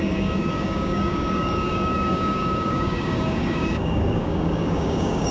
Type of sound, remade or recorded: remade